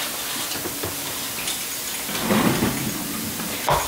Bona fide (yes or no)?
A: yes